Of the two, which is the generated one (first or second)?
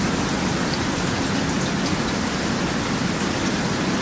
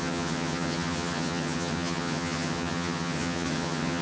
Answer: second